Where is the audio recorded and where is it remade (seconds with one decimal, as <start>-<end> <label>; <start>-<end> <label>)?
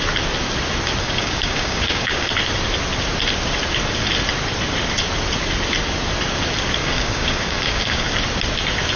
0.0-1.0 recorded; 1.0-2.3 remade; 2.3-6.8 recorded; 6.8-8.1 remade; 8.1-9.0 recorded